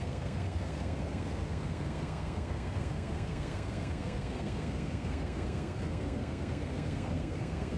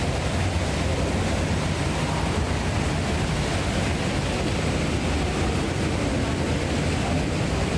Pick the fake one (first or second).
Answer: first